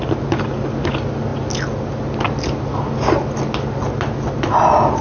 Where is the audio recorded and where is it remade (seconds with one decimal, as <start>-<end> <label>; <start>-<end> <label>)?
0.0-5.0 recorded